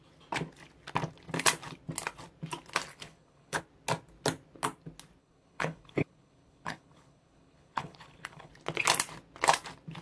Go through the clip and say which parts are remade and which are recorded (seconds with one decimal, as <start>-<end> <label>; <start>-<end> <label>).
0.0-2.9 recorded; 2.9-3.6 remade; 3.6-5.2 recorded; 5.2-8.5 remade; 8.5-10.0 recorded